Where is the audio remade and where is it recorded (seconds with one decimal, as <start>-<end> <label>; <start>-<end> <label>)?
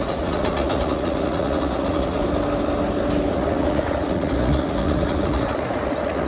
0.0-2.2 remade; 2.2-3.3 recorded; 3.3-6.3 remade